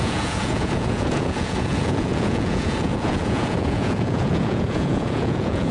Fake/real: fake